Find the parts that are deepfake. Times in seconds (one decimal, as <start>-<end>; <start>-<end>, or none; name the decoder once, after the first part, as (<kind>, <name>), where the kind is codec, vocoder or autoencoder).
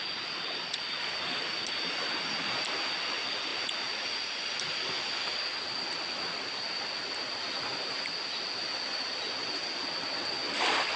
none